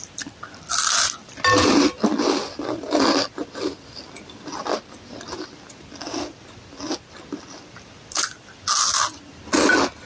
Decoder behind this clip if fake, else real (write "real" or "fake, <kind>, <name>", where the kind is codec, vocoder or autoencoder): real